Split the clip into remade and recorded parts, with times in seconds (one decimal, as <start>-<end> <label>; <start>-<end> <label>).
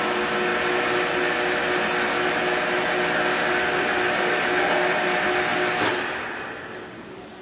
0.0-7.4 recorded